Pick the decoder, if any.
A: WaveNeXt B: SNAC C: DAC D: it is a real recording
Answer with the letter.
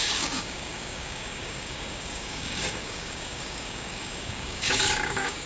C